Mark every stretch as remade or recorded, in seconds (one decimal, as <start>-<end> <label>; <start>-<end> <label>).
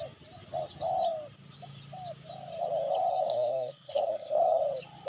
0.0-3.1 recorded; 3.1-4.6 remade; 4.6-5.1 recorded